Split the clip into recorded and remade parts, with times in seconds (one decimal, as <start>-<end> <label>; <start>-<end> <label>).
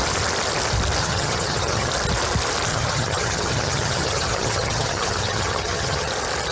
0.0-1.0 recorded; 1.0-1.9 remade; 1.9-2.7 recorded; 2.7-6.1 remade; 6.1-6.5 recorded